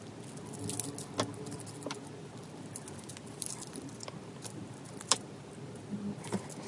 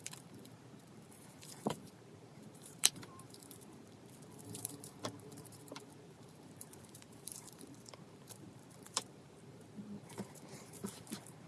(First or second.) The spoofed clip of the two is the second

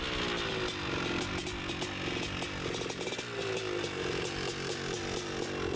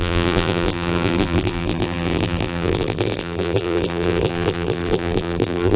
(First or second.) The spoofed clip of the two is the second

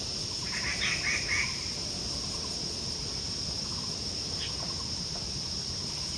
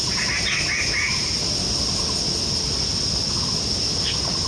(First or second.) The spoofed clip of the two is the first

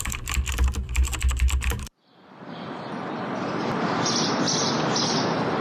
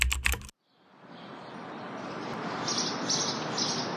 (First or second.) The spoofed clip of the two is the first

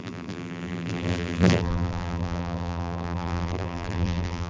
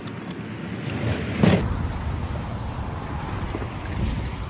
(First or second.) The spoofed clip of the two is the first